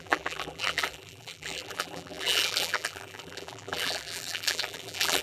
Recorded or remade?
remade